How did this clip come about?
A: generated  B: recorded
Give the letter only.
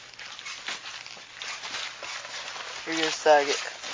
B